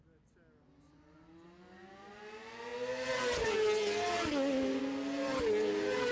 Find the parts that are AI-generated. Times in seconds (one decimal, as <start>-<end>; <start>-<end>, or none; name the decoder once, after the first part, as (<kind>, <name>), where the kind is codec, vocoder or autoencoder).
none